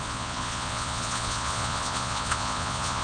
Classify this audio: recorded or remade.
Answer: remade